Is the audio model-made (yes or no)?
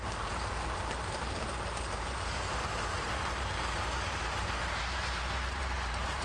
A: yes